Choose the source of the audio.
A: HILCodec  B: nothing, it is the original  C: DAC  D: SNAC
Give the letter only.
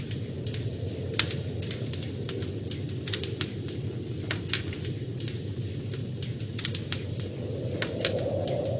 B